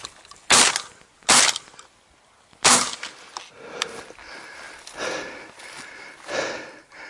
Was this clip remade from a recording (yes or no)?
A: no